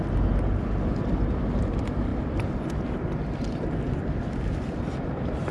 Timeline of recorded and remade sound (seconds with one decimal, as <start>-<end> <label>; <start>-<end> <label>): 0.0-5.5 recorded